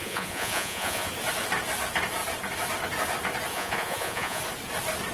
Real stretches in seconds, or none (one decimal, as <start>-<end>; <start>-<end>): 1.1-3.5; 4.4-5.1